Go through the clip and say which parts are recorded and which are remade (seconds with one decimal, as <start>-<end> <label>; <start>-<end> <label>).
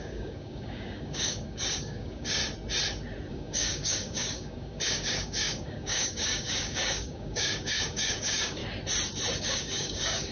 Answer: 0.0-2.4 remade; 2.4-3.3 recorded; 3.3-8.6 remade; 8.6-9.4 recorded; 9.4-10.3 remade